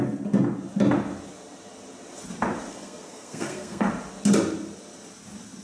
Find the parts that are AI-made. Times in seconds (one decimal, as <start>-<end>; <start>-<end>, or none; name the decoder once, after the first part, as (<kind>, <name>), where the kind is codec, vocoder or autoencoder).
2.7-3.9 (codec, SNAC)